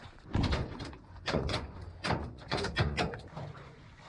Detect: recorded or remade remade